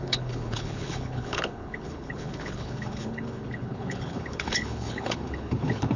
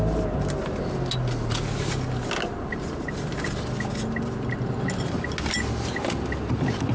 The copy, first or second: first